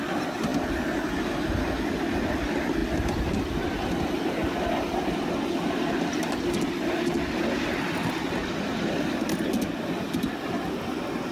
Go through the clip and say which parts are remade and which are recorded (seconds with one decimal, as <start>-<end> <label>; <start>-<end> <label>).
0.0-11.3 recorded